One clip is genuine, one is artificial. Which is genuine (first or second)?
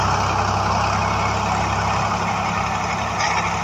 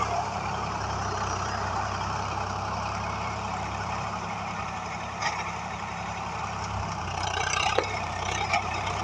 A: first